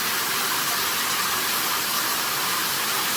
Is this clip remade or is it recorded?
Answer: remade